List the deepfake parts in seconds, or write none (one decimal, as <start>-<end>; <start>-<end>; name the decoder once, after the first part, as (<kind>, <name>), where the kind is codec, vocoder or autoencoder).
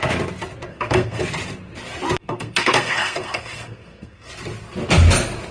0.7-1.2 (codec, SNAC); 2.2-4.3